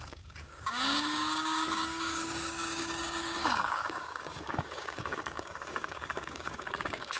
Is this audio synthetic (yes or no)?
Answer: yes